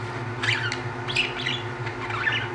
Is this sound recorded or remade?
recorded